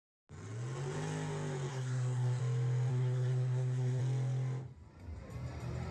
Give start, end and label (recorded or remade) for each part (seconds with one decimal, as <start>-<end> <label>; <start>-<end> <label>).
0.0-1.7 recorded; 1.7-2.4 remade; 2.4-2.9 recorded; 2.9-4.0 remade; 4.0-5.9 recorded